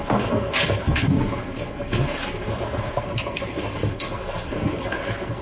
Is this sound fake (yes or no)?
yes